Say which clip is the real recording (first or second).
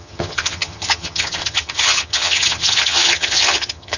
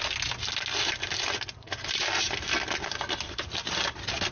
second